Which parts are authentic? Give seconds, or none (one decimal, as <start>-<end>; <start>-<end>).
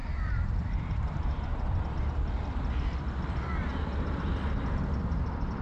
1.8-3.7; 4.3-5.6